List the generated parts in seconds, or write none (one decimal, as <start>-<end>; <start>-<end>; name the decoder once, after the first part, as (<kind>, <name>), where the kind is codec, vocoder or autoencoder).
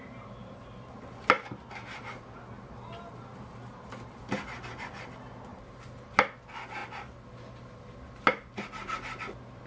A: 5.5-6.0 (vocoder, BigVGAN v2)